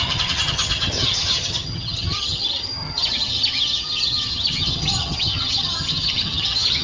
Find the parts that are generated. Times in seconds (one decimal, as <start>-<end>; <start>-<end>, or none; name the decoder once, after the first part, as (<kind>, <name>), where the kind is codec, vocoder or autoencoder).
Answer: 0.0-6.8 (vocoder, HiFi-GAN)